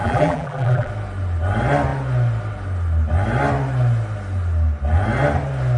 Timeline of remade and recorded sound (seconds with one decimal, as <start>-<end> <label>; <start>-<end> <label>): 0.0-0.9 remade; 0.9-5.8 recorded